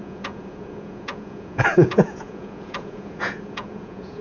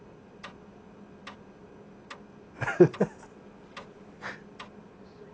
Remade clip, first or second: first